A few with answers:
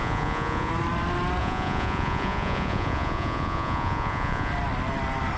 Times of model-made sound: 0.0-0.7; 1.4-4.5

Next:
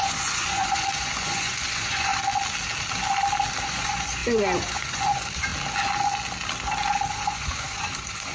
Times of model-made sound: 0.0-2.1; 3.6-5.5; 7.1-8.3

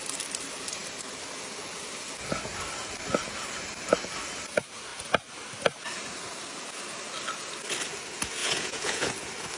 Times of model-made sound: 8.4-9.1

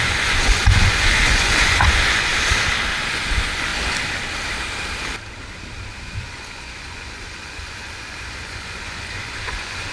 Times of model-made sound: 0.0-2.3; 3.1-3.7; 6.0-9.9